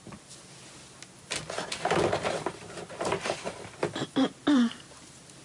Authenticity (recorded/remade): recorded